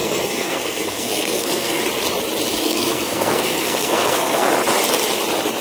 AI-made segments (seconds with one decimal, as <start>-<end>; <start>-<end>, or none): 0.0-1.8; 2.6-4.5